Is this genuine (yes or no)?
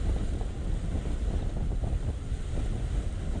yes